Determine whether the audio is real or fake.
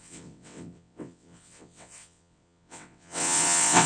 fake